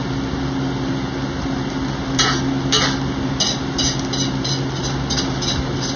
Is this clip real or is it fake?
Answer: real